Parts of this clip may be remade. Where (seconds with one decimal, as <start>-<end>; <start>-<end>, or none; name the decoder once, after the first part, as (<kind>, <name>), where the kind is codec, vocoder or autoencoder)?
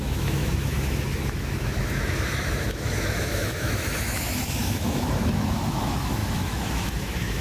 0.0-7.4 (autoencoder, DAC-VAE)